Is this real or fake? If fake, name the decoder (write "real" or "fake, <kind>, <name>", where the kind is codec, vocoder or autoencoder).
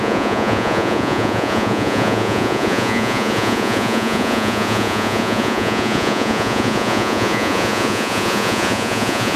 fake, vocoder, Vocos